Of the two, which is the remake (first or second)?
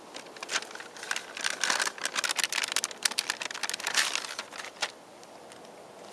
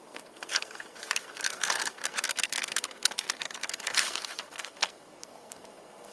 second